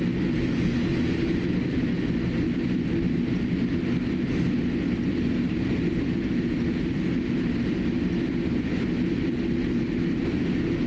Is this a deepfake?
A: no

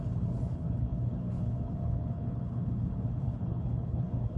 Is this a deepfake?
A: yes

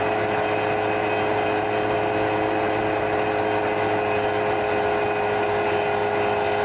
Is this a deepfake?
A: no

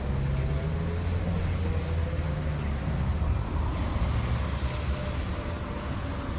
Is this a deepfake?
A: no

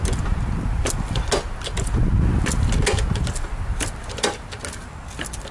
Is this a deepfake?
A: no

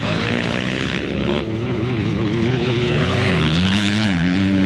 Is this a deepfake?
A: yes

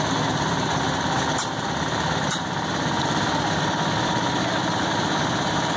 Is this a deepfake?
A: no